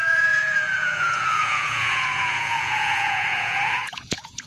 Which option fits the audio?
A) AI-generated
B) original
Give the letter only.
A